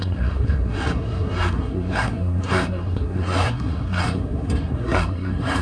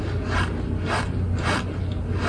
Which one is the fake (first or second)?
first